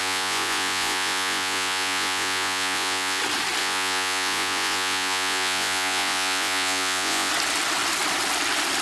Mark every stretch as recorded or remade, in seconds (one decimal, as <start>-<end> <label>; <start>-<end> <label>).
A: 0.0-3.2 remade; 3.2-3.6 recorded; 3.6-7.3 remade; 7.3-8.8 recorded